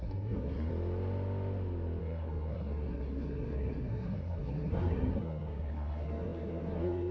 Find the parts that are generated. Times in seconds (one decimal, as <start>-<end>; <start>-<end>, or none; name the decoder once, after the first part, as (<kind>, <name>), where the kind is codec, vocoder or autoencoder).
0.0-0.7 (codec, SNAC); 2.0-7.1